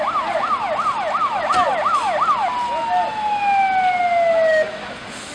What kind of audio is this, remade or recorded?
recorded